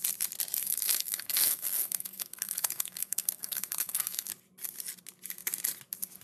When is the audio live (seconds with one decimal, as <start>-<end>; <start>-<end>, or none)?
0.0-0.6; 4.3-6.2